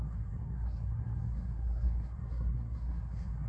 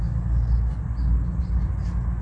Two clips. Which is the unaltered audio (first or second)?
second